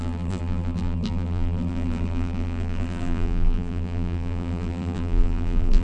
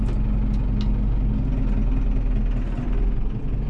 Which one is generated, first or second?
first